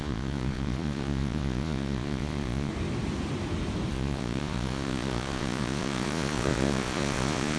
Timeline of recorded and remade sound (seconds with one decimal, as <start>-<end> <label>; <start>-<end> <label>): 0.0-2.7 remade; 2.7-3.9 recorded; 3.9-7.6 remade